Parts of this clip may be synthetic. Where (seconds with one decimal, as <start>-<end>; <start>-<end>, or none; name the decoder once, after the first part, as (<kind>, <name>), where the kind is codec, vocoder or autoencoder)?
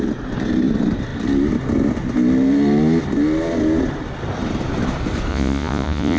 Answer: 5.3-6.2 (vocoder, Vocos)